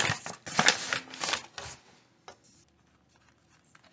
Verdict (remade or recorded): recorded